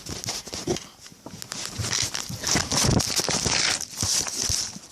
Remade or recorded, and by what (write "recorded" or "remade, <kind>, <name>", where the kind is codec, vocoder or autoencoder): recorded